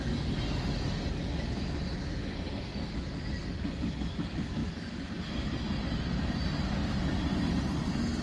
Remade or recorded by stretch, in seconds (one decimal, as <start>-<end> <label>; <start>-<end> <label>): 0.0-8.2 recorded